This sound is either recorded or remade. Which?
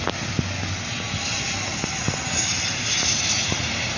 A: recorded